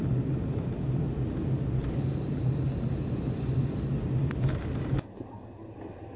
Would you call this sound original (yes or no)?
yes